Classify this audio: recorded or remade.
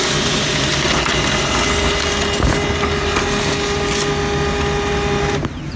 recorded